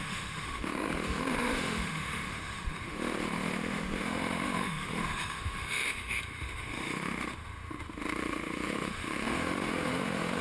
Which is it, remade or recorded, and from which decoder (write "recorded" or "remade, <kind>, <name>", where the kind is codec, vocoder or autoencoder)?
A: remade, autoencoder, DAC-VAE